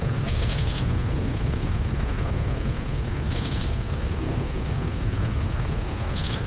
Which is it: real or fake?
fake